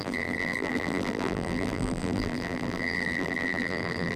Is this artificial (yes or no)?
yes